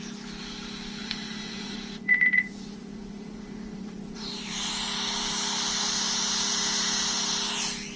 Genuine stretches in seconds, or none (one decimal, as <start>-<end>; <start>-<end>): 0.0-1.0; 4.3-8.0